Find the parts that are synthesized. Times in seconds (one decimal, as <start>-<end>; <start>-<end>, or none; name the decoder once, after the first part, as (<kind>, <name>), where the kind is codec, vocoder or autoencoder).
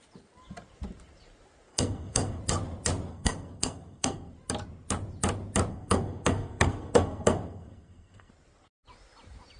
1.7-2.4 (codec, SNAC); 3.1-4.3; 5.7-8.3